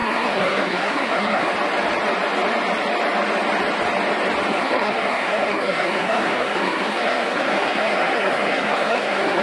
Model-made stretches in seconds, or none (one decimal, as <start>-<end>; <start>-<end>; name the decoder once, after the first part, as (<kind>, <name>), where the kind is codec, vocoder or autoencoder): 0.0-1.5 (codec, SNAC); 4.5-9.4